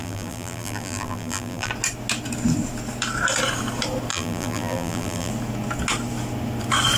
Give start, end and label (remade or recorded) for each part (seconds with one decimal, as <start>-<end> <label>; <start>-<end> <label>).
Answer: 0.0-1.7 remade; 1.7-4.1 recorded; 4.1-5.3 remade; 5.3-7.0 recorded